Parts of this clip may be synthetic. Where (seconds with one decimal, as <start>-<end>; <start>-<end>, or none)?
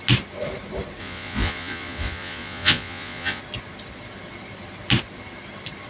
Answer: 1.0-3.4